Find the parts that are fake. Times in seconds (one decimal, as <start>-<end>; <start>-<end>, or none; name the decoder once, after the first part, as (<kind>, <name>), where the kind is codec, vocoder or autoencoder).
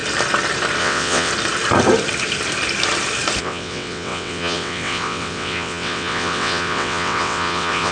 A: 0.8-1.3 (vocoder, WaveNeXt); 3.4-7.9